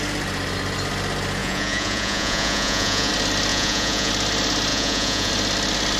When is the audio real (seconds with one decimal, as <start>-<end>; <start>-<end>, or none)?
0.0-1.4; 3.1-3.5; 4.1-4.7; 5.3-6.0